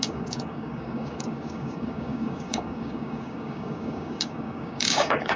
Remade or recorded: remade